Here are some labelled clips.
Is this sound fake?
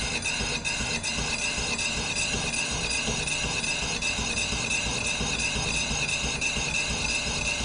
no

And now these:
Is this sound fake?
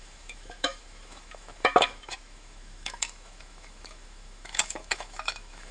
yes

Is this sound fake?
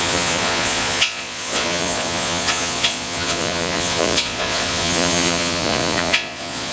yes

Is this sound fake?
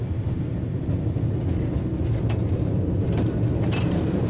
no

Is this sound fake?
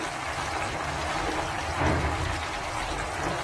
no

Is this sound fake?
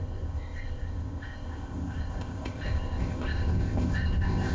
yes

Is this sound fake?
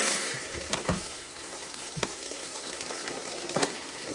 yes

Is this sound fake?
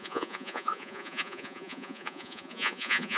yes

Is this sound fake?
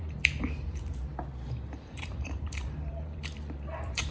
yes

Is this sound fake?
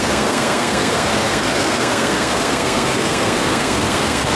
yes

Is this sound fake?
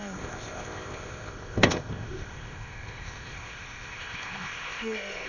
yes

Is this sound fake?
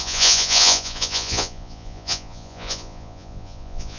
yes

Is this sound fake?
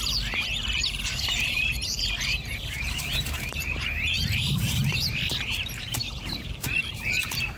yes